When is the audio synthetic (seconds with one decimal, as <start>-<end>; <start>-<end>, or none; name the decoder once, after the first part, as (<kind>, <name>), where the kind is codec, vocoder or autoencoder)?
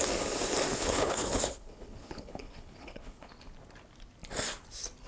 0.7-3.3 (codec, HILCodec)